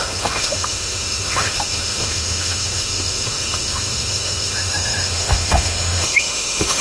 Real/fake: fake